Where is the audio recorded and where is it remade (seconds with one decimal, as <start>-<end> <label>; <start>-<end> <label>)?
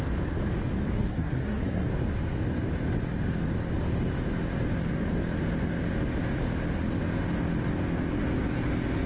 0.0-0.9 recorded; 0.9-1.9 remade; 1.9-9.1 recorded